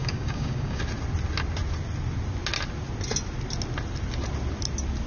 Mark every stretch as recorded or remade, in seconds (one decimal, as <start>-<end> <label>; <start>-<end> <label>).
0.0-0.8 remade; 0.8-5.1 recorded